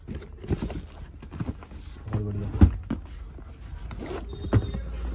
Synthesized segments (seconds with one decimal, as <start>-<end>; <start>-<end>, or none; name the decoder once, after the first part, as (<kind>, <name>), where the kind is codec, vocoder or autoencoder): none